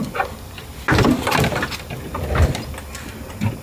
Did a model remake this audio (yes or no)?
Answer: no